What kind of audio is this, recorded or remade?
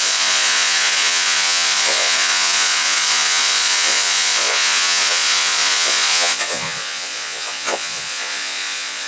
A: remade